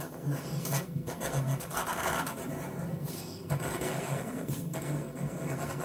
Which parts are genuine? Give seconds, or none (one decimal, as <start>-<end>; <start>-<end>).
2.4-2.9